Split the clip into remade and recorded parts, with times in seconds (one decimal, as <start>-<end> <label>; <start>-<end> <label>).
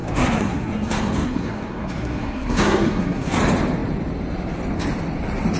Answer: 0.0-3.4 remade; 3.4-5.6 recorded